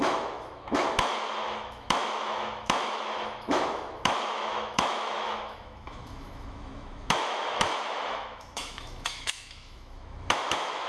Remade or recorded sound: remade